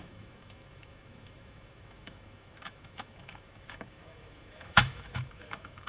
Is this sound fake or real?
fake